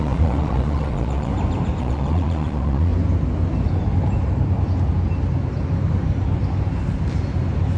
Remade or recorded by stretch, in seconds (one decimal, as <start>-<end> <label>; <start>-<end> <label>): 0.0-1.3 remade; 1.3-1.8 recorded; 1.8-2.9 remade; 2.9-7.8 recorded